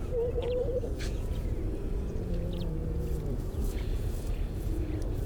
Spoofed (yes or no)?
yes